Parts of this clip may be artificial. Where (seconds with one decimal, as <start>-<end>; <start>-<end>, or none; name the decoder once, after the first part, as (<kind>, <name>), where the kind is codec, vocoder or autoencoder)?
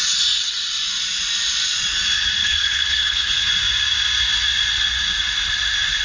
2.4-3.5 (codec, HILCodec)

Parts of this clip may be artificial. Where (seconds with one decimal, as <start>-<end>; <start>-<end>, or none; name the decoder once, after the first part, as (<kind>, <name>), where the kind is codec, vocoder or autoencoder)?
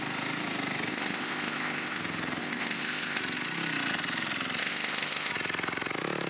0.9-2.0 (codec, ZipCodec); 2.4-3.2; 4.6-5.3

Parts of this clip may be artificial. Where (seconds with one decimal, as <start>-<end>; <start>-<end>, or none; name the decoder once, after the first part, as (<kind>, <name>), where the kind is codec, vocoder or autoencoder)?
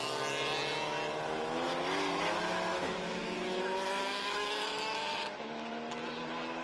2.7-3.6 (autoencoder, DAC-VAE); 4.0-5.7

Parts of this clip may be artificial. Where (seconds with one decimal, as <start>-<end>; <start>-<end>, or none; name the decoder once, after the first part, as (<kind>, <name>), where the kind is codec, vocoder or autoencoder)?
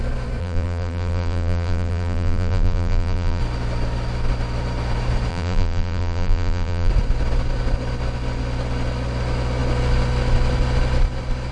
0.4-3.4 (vocoder, BigVGAN v2); 5.3-6.9